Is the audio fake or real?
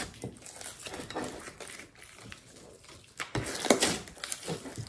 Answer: real